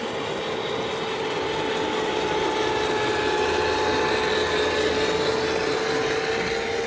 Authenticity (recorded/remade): recorded